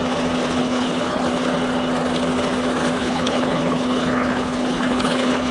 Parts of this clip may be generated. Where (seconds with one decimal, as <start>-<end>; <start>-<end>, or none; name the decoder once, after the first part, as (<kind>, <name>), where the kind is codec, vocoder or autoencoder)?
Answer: 0.6-1.2 (codec, HILCodec); 3.0-5.5